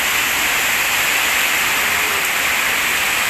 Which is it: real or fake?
fake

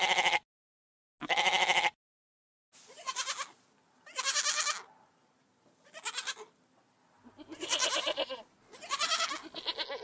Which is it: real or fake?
real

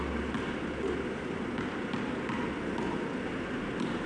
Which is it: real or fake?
real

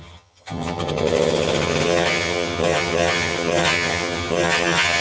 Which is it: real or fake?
fake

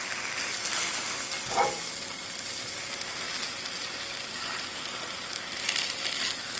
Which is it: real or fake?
real